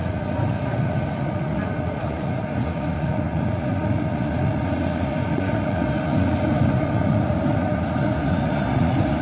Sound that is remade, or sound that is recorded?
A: remade